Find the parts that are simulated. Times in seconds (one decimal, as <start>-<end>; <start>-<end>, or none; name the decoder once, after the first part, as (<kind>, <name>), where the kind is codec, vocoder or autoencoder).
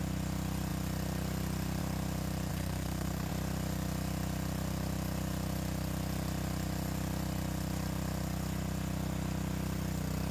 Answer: 2.5-3.3 (codec, SNAC)